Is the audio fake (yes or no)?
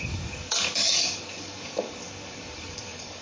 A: yes